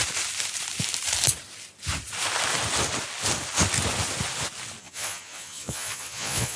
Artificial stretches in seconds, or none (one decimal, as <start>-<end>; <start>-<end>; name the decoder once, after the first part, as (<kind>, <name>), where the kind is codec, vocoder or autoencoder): 4.8-6.6 (vocoder, Vocos)